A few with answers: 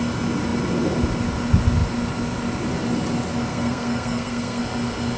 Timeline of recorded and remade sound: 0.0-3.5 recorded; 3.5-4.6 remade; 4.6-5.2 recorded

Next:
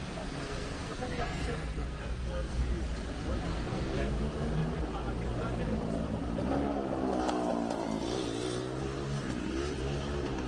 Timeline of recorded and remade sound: 0.0-2.7 remade; 2.7-3.5 recorded; 3.5-4.1 remade; 4.1-10.5 recorded